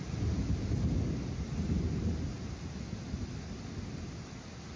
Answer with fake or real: real